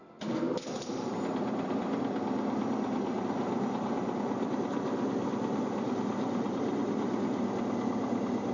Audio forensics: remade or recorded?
remade